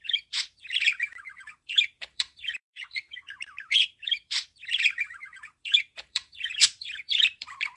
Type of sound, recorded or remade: remade